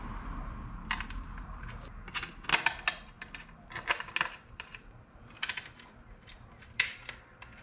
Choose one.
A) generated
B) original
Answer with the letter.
B